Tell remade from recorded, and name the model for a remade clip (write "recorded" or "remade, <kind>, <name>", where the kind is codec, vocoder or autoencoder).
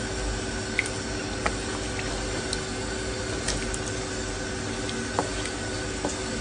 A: recorded